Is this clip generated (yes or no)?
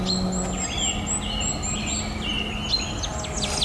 no